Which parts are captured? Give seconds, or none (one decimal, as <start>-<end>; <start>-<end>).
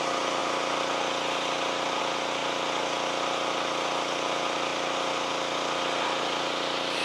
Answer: 0.0-7.0